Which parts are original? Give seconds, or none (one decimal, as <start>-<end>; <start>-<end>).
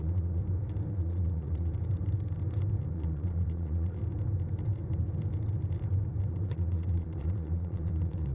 0.4-0.9; 1.7-2.9; 4.0-6.3